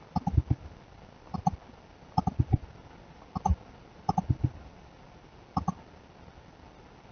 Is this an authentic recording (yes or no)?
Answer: yes